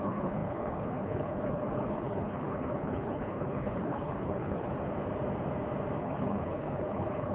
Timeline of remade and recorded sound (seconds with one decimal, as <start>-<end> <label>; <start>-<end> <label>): 0.0-4.7 remade; 4.7-6.0 recorded; 6.0-7.3 remade